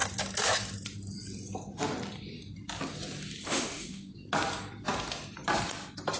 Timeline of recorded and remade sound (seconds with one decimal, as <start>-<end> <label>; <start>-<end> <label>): 0.0-3.4 recorded; 3.4-4.1 remade; 4.1-6.2 recorded

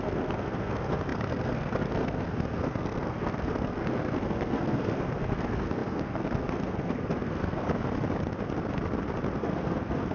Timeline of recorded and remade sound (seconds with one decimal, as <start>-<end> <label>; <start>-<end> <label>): 0.0-7.7 remade; 7.7-9.4 recorded; 9.4-10.1 remade

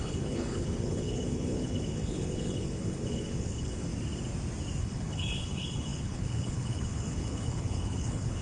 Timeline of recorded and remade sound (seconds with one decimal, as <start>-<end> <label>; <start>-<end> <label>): 0.0-3.9 remade; 3.9-4.8 recorded; 4.8-8.4 remade

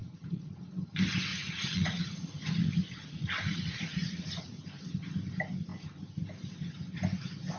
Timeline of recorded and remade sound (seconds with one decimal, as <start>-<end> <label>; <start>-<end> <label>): 0.0-0.7 remade; 0.7-1.3 recorded; 1.3-4.6 remade; 4.6-7.6 recorded

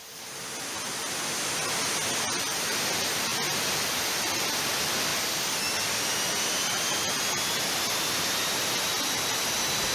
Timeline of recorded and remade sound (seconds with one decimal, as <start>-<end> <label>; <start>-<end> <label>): 0.0-9.9 recorded

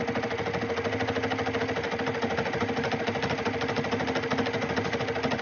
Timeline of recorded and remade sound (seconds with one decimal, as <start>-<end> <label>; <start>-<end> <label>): 0.0-5.4 recorded